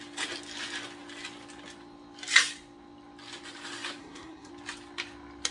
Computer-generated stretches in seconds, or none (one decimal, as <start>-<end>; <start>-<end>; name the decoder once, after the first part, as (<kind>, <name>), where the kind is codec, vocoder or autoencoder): 4.0-4.5 (codec, SNAC)